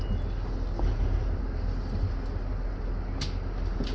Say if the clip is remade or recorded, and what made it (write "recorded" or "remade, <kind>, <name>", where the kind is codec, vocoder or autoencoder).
recorded